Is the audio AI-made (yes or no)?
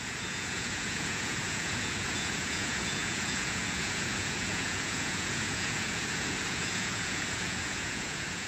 yes